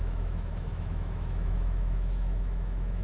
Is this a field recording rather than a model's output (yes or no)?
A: no